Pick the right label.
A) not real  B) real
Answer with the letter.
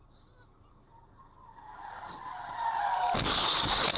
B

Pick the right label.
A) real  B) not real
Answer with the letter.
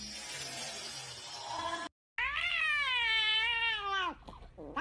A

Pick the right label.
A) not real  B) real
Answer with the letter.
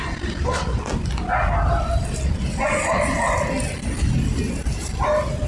B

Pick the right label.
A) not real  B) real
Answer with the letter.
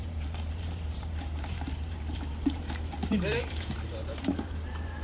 A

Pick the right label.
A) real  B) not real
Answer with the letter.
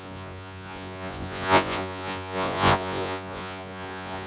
B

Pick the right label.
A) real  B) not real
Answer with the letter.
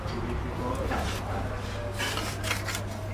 A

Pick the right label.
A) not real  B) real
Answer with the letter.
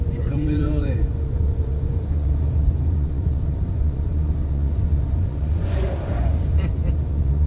A